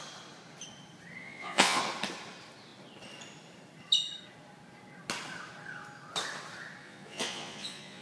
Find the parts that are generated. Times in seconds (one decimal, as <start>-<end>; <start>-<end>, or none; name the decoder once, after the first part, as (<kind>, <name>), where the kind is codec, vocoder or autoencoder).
1.2-1.8 (vocoder, Vocos); 6.8-8.0